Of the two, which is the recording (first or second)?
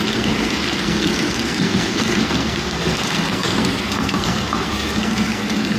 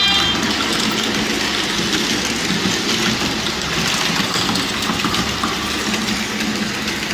second